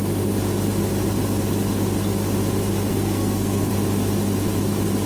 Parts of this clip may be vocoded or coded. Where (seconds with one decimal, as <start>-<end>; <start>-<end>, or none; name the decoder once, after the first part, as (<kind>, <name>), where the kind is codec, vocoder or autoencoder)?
2.9-3.7 (codec, SNAC)